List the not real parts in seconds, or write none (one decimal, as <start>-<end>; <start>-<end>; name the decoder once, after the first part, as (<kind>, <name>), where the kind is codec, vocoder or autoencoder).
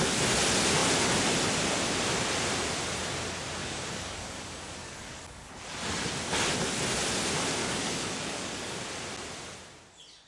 3.6-5.5 (codec, DAC); 7.6-8.8